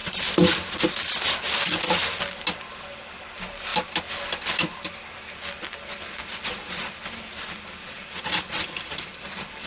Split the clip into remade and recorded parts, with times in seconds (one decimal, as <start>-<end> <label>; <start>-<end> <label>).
0.0-9.7 recorded